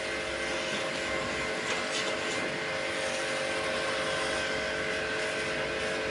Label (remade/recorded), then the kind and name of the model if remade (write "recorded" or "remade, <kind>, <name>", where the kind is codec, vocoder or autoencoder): recorded